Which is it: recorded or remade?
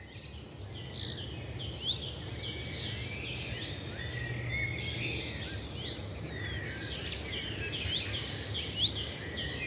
recorded